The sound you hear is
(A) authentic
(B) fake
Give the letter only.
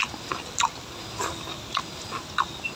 A